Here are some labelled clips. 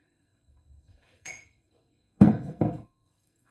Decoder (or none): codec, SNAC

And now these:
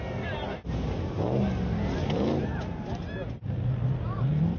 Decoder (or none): none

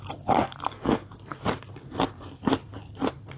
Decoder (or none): none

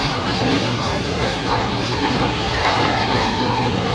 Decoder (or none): codec, SNAC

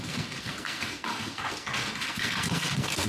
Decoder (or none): codec, SNAC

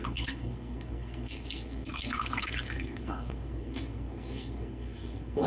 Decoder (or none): codec, SNAC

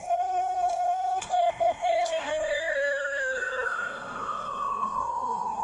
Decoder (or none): codec, SNAC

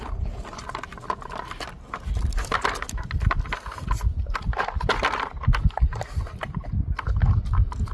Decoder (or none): none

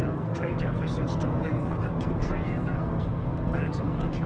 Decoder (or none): codec, SNAC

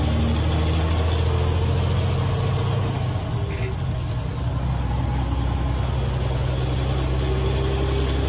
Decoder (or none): none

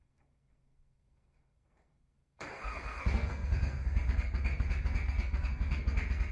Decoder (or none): codec, SNAC